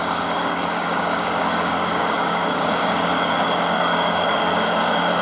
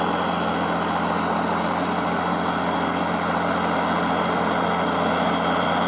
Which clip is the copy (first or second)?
first